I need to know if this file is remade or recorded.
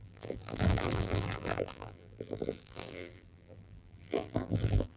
remade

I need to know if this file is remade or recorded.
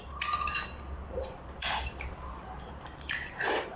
remade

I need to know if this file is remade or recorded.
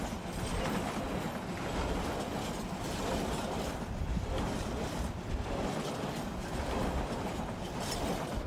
recorded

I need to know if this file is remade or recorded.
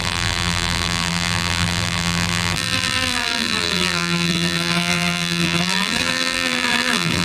remade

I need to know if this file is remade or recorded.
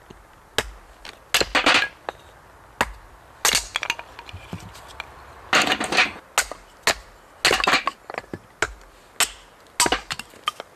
recorded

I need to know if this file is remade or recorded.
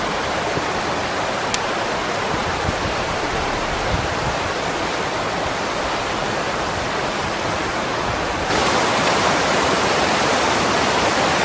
remade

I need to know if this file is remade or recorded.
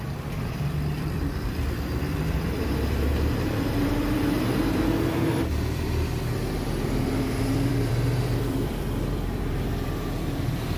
remade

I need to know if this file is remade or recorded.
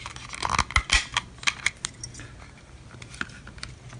recorded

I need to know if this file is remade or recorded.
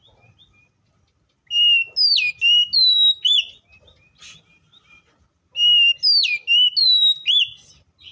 recorded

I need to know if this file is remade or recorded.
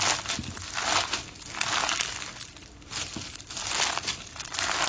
recorded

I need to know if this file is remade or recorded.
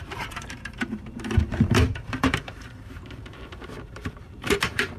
remade